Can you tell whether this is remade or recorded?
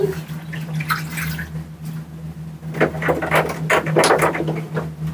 recorded